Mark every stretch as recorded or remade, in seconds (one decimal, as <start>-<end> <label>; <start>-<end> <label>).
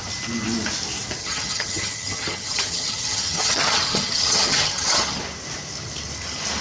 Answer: 0.0-1.2 recorded; 1.2-5.2 remade; 5.2-6.6 recorded